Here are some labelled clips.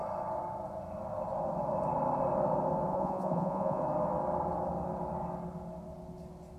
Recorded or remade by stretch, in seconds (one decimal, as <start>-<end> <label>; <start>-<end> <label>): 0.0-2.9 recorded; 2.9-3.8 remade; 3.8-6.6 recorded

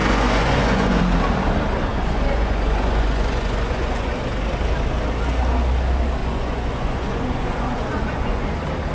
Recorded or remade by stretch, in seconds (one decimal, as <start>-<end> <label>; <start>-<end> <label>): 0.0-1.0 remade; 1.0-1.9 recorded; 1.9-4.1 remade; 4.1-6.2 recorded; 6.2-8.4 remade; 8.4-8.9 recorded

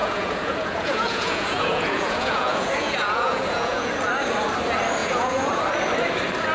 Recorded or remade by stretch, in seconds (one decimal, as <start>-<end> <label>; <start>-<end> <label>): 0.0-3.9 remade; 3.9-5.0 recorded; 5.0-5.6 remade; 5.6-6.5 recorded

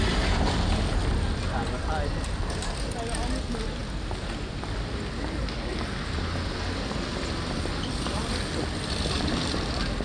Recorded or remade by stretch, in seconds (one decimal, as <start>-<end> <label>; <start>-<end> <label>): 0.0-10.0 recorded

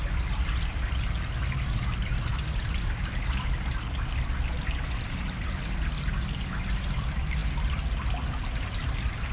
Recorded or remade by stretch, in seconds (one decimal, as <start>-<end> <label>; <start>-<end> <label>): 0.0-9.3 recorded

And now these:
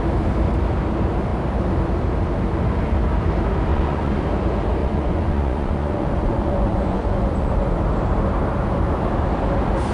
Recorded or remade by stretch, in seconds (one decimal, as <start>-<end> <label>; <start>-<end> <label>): 0.0-3.7 recorded; 3.7-4.2 remade; 4.2-4.8 recorded; 4.8-7.8 remade; 7.8-9.9 recorded